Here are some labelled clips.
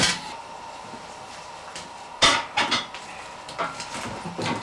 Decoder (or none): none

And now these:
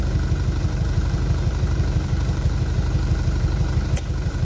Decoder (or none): vocoder, BigVGAN v2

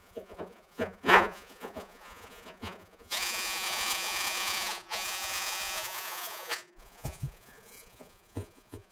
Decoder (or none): vocoder, Vocos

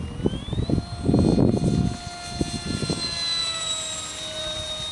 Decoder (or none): none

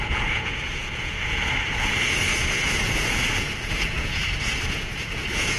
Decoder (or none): vocoder, Vocos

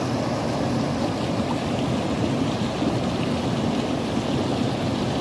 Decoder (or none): none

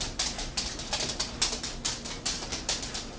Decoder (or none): none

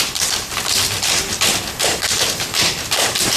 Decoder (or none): vocoder, BigVGAN v2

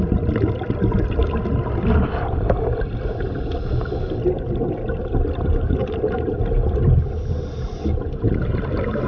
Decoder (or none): none